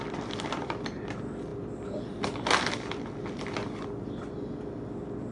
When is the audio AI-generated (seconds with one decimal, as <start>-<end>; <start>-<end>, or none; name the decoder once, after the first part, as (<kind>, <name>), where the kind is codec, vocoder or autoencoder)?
none